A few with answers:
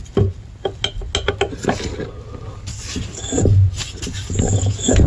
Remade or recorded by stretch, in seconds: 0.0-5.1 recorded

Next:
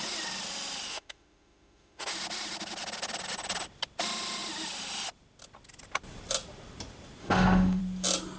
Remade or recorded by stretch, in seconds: 0.0-0.9 recorded; 0.9-2.1 remade; 2.1-7.2 recorded; 7.2-7.8 remade; 7.8-8.4 recorded